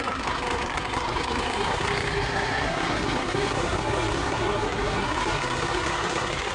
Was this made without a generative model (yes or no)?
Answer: no